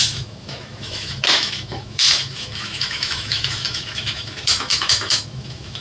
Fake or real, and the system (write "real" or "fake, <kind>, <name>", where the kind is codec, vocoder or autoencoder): fake, autoencoder, DAC-VAE